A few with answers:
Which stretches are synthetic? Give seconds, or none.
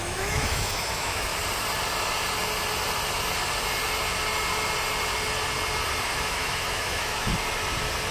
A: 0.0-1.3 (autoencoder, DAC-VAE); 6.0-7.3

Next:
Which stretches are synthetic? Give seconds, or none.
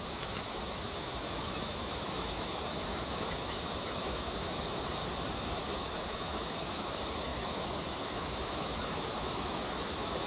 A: 0.0-5.0 (autoencoder, DAC-VAE); 5.6-10.3